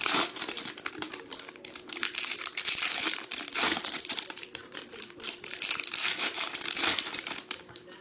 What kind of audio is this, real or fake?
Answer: fake